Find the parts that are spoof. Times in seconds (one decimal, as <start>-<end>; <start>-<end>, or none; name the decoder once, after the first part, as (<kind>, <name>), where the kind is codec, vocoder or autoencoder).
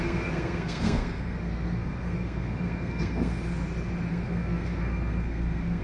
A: 0.0-3.4 (codec, SNAC); 4.1-5.8